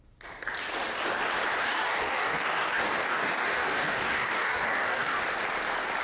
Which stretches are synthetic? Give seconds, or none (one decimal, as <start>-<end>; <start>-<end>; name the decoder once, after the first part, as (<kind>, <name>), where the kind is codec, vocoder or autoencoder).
1.6-5.2 (codec, DAC)